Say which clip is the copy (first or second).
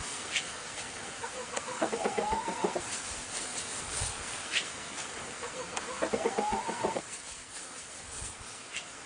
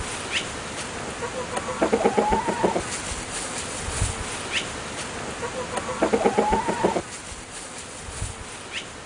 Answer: first